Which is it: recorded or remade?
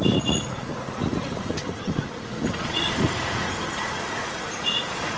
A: remade